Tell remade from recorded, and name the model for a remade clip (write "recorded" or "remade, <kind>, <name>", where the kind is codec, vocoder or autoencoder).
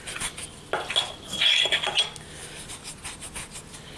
recorded